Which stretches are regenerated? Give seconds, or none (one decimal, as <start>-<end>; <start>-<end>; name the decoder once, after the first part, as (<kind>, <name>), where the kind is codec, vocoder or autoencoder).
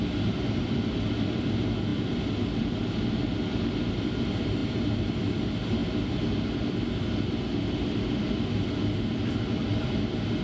none